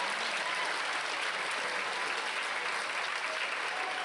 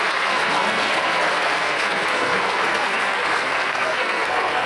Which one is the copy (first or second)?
second